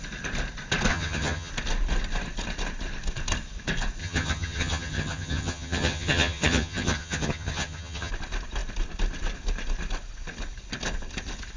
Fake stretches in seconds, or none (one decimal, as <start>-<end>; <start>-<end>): 0.9-1.5; 4.0-8.1